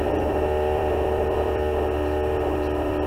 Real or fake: fake